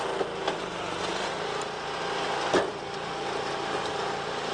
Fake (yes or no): no